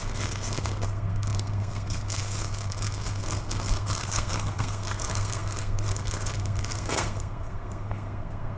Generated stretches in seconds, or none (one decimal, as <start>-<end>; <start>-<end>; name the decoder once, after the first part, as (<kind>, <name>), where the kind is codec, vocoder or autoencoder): 0.0-8.6 (codec, SNAC)